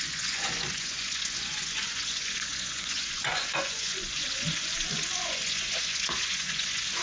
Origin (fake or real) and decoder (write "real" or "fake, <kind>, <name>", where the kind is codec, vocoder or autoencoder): fake, vocoder, Vocos